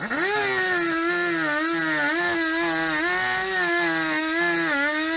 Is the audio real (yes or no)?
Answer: yes